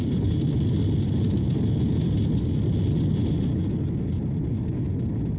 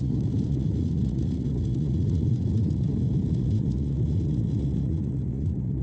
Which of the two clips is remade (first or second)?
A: second